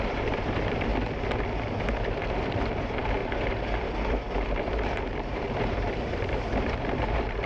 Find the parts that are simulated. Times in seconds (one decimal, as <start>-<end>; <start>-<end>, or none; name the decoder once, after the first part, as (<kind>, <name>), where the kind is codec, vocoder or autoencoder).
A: 0.0-0.9 (vocoder, BigVGAN v2); 2.0-3.2; 4.1-7.5